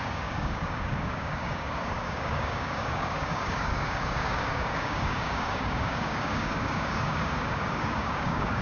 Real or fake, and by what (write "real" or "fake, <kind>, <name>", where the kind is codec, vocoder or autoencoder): fake, codec, DAC